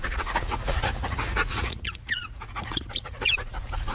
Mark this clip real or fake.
fake